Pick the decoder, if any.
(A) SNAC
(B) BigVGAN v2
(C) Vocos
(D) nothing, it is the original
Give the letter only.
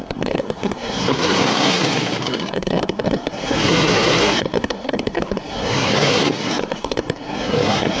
A